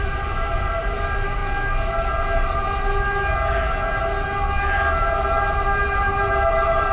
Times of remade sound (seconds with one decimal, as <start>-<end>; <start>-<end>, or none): 0.0-1.4; 5.5-6.9

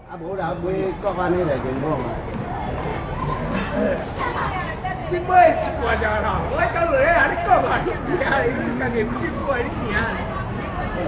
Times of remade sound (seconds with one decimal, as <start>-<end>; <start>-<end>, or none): 0.0-2.9; 4.5-5.0; 6.6-11.1